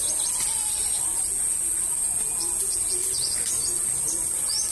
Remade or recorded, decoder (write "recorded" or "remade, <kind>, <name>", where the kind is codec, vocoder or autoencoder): recorded